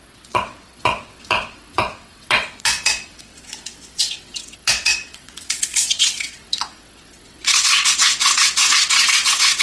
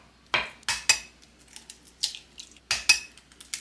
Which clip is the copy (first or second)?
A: first